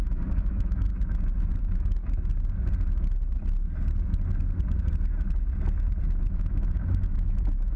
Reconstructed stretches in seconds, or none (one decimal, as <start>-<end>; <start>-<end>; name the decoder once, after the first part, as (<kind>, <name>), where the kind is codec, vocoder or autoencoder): 0.0-0.9 (autoencoder, DAC-VAE); 1.6-2.0; 6.3-7.8